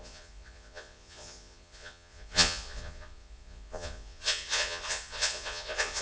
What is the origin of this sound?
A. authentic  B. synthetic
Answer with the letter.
B